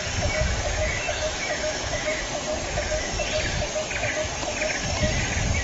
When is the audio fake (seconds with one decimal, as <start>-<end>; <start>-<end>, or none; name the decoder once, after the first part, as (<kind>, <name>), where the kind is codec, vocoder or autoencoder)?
0.8-2.2 (autoencoder, DAC-VAE)